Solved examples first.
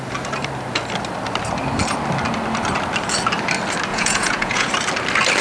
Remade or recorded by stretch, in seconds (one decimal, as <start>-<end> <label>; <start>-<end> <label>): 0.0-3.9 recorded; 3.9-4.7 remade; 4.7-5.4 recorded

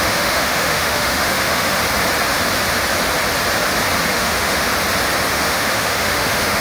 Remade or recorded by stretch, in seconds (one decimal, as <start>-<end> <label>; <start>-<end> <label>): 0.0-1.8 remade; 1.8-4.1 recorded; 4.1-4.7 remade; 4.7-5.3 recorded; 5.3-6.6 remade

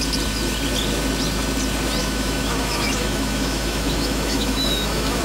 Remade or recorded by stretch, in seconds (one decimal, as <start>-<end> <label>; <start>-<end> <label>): 0.0-2.0 recorded; 2.0-5.2 remade

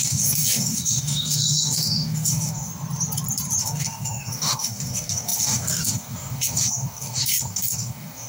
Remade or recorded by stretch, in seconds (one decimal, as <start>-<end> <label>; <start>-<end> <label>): 0.0-2.7 remade; 2.7-3.6 recorded; 3.6-8.3 remade

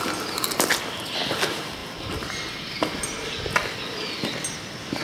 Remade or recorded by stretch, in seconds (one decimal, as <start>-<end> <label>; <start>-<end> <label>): 0.0-5.0 recorded

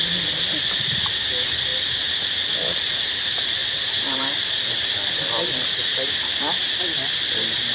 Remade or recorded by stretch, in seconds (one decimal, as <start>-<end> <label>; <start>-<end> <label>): 0.0-3.6 recorded; 3.6-7.0 remade; 7.0-7.7 recorded

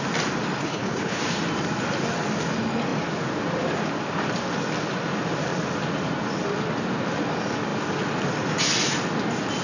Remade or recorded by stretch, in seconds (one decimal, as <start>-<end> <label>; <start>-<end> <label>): 0.0-0.6 recorded; 0.6-1.2 remade; 1.2-9.6 recorded